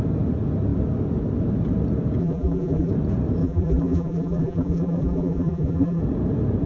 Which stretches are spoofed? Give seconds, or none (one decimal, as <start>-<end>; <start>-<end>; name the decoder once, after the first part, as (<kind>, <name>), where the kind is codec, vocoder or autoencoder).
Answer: 2.2-2.9 (vocoder, BigVGAN v2); 3.4-6.0